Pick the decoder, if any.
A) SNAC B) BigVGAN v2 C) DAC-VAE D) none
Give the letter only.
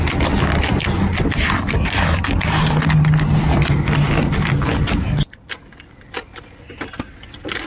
D